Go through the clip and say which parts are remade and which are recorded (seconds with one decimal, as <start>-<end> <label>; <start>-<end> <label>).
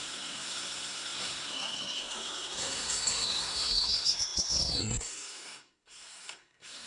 0.0-6.9 remade